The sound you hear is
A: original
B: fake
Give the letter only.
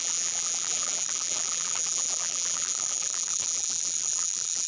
B